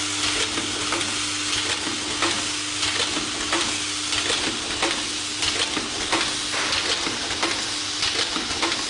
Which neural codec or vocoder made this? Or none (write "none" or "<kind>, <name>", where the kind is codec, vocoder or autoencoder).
none